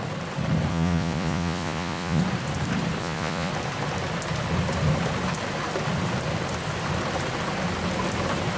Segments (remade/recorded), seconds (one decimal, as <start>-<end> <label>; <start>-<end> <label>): 0.0-0.7 recorded; 0.7-2.2 remade; 2.2-3.0 recorded; 3.0-3.5 remade; 3.5-8.6 recorded